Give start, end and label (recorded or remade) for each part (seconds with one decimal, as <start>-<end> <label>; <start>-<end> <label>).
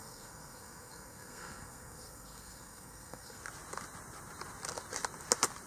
0.0-3.4 remade; 3.4-5.7 recorded